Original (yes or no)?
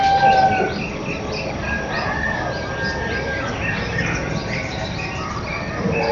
yes